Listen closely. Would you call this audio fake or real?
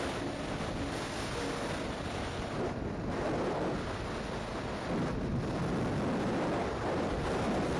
real